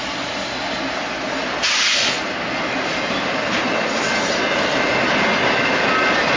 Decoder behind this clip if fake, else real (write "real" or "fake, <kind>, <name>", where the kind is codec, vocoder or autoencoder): real